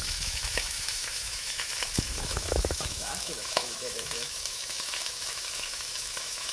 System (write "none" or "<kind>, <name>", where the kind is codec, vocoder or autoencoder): autoencoder, DAC-VAE